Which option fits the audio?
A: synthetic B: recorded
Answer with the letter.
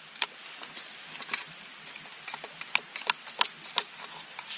B